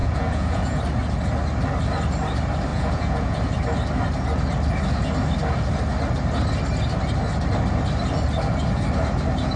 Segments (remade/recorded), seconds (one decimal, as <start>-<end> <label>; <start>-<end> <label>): 0.0-0.8 remade; 0.8-2.7 recorded; 2.7-3.4 remade; 3.4-9.6 recorded